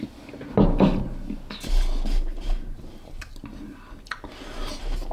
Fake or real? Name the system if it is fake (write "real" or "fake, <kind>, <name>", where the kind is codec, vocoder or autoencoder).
real